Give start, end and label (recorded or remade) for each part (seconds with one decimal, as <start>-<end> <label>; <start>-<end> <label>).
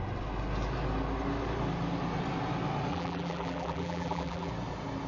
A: 0.0-2.9 recorded; 2.9-4.5 remade; 4.5-5.1 recorded